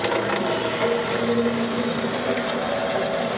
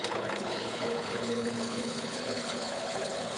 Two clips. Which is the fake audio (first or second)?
second